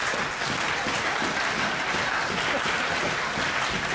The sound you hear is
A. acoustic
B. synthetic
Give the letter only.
A